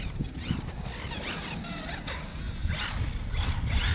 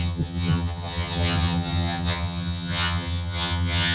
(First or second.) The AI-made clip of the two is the second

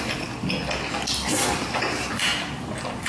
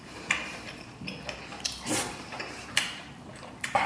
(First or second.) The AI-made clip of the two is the second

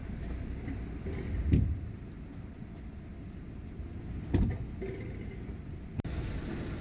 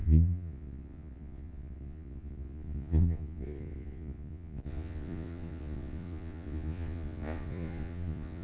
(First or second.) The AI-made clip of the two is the second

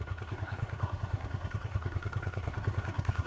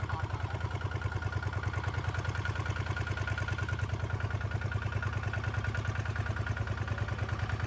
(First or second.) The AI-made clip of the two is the first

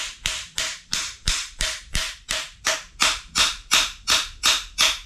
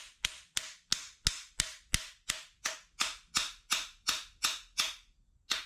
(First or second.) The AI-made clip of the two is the first